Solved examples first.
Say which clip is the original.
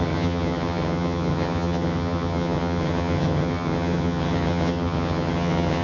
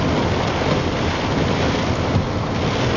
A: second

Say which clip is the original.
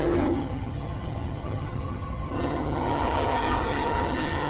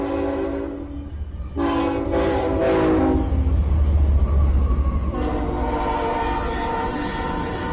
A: second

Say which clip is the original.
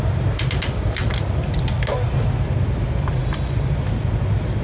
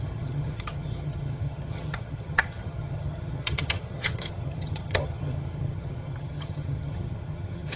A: first